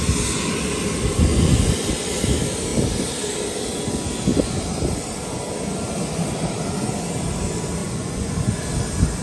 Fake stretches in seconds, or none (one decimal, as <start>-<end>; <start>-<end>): 1.3-1.9; 7.8-8.6